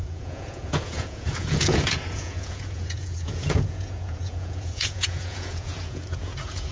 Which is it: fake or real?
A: fake